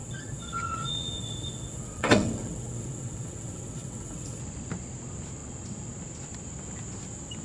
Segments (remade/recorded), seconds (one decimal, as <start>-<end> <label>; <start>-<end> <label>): 0.0-4.4 remade; 4.4-7.4 recorded

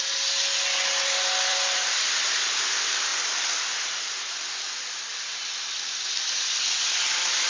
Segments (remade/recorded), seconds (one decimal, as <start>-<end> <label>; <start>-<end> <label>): 0.0-1.5 recorded; 1.5-2.6 remade; 2.6-5.1 recorded; 5.1-7.5 remade

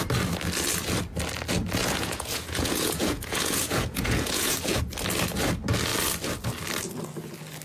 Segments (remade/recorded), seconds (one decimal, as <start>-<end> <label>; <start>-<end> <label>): 0.0-1.8 recorded; 1.8-4.8 remade; 4.8-7.6 recorded

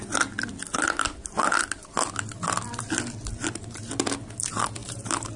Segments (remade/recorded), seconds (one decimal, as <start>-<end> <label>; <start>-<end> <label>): 0.0-4.8 recorded; 4.8-5.4 remade

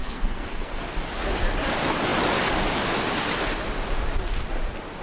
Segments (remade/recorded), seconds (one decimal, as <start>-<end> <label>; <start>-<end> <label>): 0.0-0.8 remade; 0.8-5.0 recorded

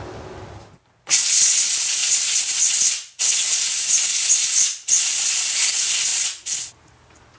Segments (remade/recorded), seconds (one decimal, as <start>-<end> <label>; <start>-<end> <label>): 0.0-2.0 recorded; 2.0-2.8 remade; 2.8-7.4 recorded